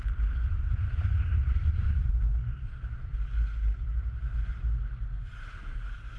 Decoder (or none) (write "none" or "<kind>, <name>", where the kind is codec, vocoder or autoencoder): none